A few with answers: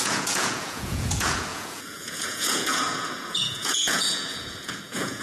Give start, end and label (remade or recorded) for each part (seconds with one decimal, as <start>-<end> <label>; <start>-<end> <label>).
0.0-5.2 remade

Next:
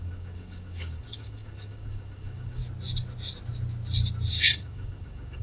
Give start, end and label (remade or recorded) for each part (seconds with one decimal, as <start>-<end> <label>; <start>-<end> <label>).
0.0-2.6 remade; 2.6-4.3 recorded; 4.3-5.4 remade

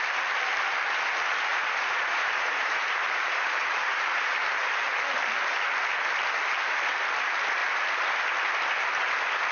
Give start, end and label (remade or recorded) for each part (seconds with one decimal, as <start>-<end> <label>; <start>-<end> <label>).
0.0-1.5 recorded; 1.5-4.7 remade; 4.7-9.5 recorded